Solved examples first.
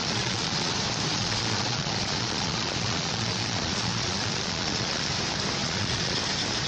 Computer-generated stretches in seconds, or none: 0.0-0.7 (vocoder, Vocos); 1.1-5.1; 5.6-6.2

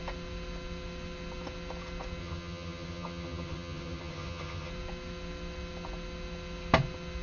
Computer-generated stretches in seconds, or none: 2.2-4.7 (vocoder, HiFi-GAN)

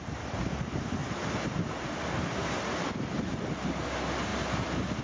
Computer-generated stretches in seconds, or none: 1.0-3.5 (vocoder, BigVGAN v2)

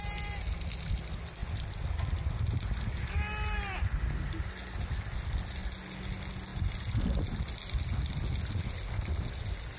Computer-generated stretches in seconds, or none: none

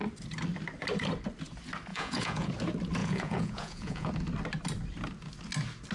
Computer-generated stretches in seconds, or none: 1.9-2.5 (vocoder, Vocos); 3.0-4.1